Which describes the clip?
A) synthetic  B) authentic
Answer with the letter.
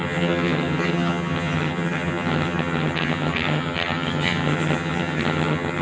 A